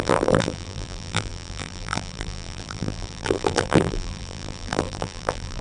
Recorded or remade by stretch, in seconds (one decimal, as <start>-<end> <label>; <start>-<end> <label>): 0.0-5.6 remade